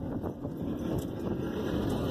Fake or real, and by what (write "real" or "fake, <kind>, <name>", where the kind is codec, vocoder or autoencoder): real